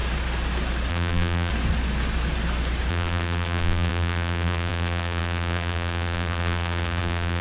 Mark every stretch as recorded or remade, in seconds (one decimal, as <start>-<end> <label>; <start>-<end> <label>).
0.0-0.9 recorded; 0.9-1.5 remade; 1.5-2.9 recorded; 2.9-7.4 remade